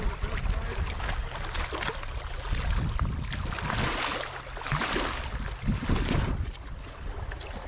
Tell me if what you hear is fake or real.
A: real